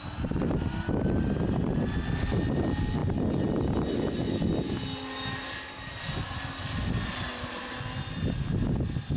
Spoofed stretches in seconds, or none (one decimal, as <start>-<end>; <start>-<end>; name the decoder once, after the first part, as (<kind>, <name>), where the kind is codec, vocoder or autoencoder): none